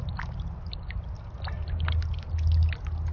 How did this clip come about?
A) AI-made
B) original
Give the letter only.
B